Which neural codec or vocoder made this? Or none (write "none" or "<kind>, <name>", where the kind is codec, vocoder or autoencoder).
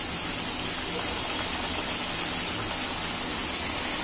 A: none